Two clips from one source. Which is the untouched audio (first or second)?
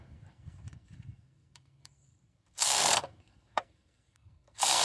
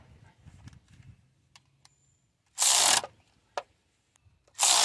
second